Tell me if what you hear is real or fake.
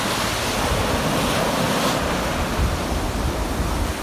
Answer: real